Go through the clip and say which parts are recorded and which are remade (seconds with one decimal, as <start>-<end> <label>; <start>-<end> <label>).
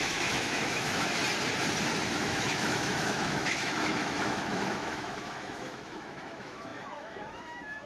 0.0-1.2 remade; 1.2-2.1 recorded; 2.1-7.9 remade